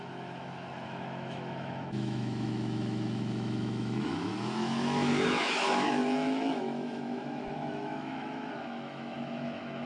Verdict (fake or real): fake